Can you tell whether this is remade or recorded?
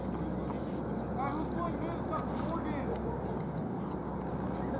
recorded